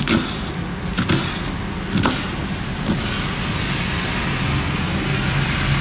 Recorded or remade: recorded